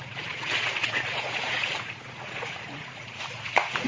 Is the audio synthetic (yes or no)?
yes